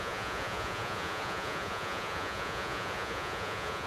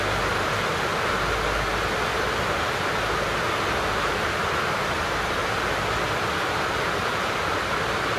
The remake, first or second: first